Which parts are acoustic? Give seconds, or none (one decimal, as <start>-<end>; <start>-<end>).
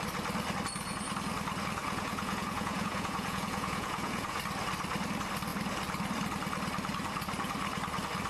0.0-1.8; 4.4-8.3